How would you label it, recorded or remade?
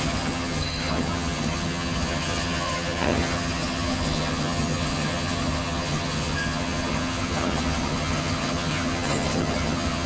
remade